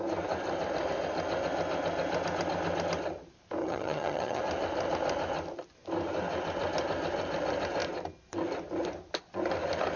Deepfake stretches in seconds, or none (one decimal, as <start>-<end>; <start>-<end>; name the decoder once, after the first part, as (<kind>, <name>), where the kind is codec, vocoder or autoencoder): 3.6-4.4 (vocoder, HiFi-GAN)